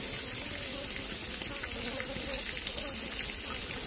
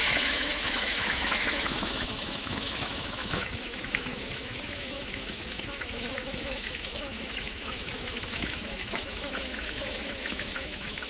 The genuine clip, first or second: first